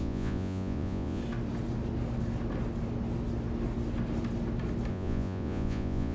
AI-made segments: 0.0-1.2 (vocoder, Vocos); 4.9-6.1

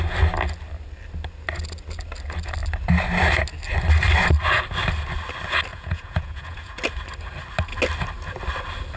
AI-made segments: 5.7-6.8 (vocoder, Vocos)

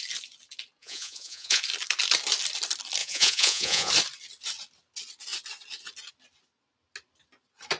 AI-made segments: 0.8-1.6 (vocoder, Vocos); 3.0-3.9

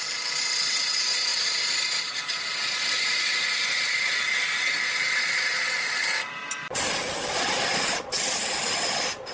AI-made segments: none

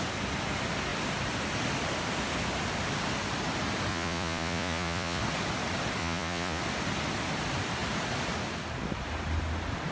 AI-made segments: 3.9-5.2 (vocoder, Vocos); 6.0-6.6

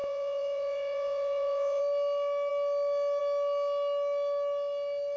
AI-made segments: 0.0-1.8 (vocoder, Vocos)

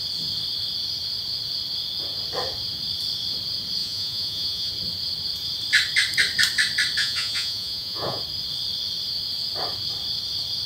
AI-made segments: 3.8-4.7 (vocoder, Vocos); 7.0-8.2

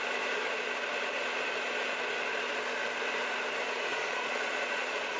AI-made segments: 3.9-5.2 (vocoder, Vocos)